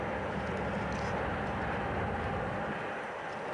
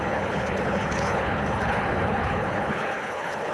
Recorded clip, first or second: first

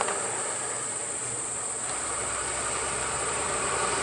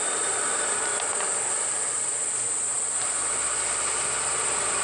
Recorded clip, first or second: second